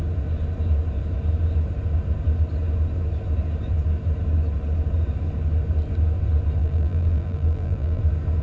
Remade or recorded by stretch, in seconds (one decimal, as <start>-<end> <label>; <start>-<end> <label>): 0.0-6.6 recorded; 6.6-8.0 remade; 8.0-8.4 recorded